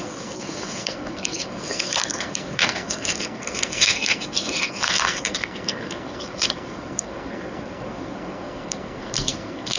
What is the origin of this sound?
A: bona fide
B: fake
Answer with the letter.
B